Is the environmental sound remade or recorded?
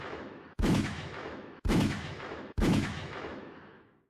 remade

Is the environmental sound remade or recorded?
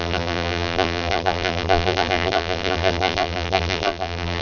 remade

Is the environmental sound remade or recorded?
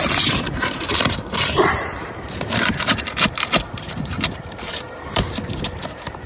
remade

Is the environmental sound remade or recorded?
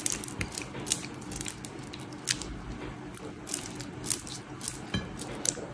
recorded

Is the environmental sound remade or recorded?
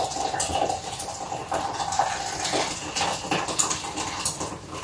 recorded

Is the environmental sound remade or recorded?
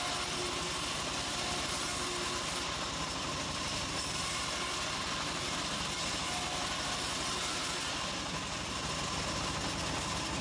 recorded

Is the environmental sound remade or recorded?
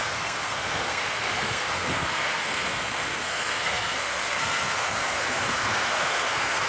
remade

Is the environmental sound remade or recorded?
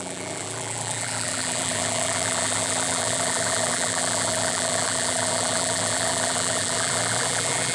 remade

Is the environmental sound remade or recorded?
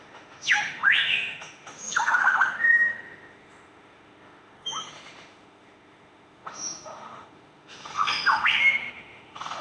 remade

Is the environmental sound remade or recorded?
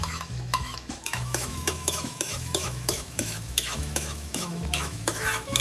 remade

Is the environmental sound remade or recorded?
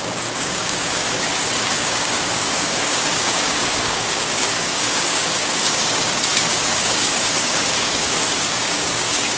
remade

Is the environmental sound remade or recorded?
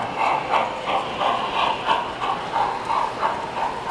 recorded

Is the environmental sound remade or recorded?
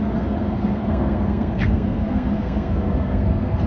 remade